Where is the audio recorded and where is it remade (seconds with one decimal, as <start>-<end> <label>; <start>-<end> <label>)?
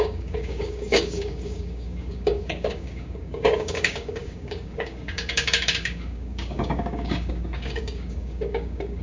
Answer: 0.0-9.0 remade